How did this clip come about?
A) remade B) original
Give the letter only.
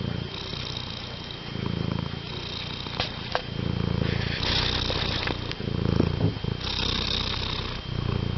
B